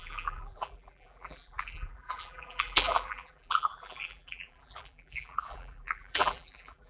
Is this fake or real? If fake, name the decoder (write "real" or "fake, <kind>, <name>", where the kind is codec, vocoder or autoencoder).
fake, vocoder, BigVGAN v2